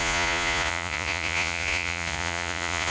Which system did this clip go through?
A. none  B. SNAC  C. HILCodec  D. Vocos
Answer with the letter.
D